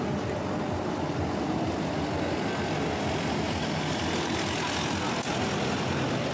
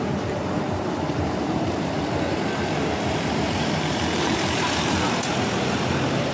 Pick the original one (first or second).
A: first